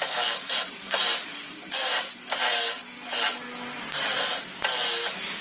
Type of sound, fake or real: real